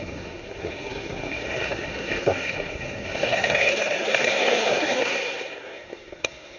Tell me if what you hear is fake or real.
fake